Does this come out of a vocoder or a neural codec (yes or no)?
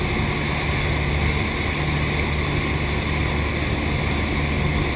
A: no